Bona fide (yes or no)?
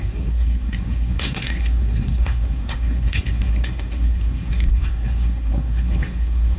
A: no